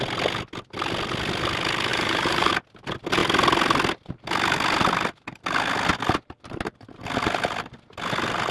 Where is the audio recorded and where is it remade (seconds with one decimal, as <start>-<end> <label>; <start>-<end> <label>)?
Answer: 0.0-1.9 recorded; 1.9-2.5 remade; 2.5-8.5 recorded